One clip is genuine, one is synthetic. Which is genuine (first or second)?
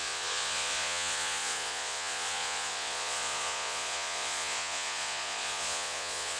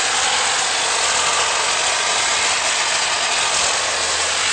second